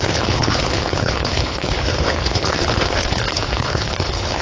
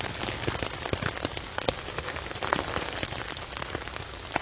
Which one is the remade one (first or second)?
first